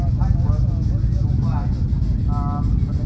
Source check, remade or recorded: recorded